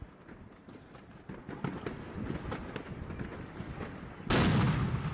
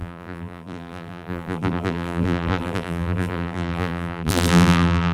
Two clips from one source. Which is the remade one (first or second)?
second